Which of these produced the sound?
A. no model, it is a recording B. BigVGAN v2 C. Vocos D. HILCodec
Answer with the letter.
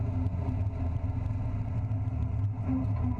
A